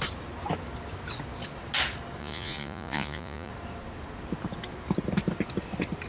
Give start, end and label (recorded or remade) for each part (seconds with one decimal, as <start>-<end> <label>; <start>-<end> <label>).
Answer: 0.0-2.2 recorded; 2.2-3.5 remade; 3.5-6.1 recorded

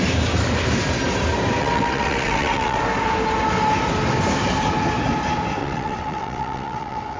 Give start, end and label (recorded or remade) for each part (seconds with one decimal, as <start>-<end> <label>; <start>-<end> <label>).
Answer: 0.0-1.6 recorded; 1.6-2.8 remade; 2.8-5.6 recorded; 5.6-7.2 remade

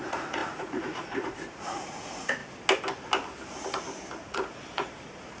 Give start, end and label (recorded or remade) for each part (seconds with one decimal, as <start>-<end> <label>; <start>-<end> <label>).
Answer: 0.0-2.4 remade; 2.4-4.2 recorded; 4.2-5.4 remade

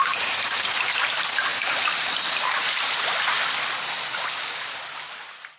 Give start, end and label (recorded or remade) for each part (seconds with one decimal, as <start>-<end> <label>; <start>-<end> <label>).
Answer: 0.0-1.5 recorded; 1.5-4.9 remade; 4.9-5.6 recorded

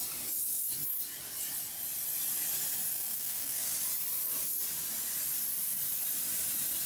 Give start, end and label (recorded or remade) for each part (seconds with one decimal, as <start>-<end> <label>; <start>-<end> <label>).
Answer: 0.0-2.9 recorded; 2.9-3.7 remade; 3.7-6.9 recorded

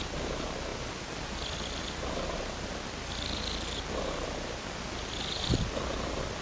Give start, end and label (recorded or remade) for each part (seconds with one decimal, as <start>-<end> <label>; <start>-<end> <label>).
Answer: 0.0-6.4 recorded

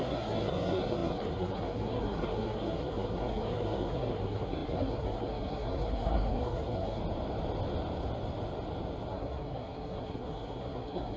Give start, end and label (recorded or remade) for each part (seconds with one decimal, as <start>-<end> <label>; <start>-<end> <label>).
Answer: 0.0-7.0 remade; 7.0-9.1 recorded; 9.1-11.2 remade

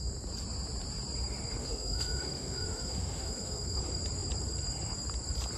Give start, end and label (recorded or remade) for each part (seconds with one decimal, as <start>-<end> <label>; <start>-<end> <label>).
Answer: 0.0-1.6 recorded; 1.6-3.8 remade; 3.8-5.6 recorded